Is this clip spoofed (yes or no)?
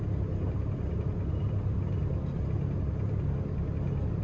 no